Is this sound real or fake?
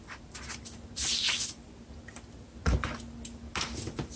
real